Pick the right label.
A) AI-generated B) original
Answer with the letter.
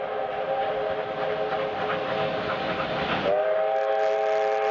B